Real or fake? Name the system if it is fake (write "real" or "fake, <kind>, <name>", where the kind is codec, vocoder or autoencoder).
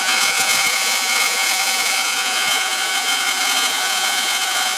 fake, vocoder, Vocos